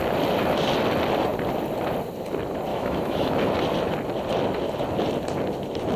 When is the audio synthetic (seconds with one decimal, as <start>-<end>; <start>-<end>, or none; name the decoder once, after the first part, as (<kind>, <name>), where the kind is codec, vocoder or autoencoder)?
2.7-3.3 (autoencoder, DAC-VAE)